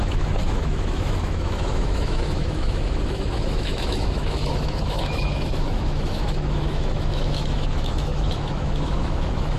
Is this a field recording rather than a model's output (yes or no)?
no